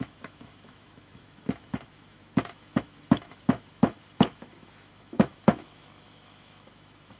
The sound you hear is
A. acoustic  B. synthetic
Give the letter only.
B